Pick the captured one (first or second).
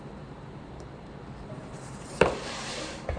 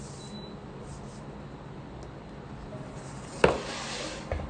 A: second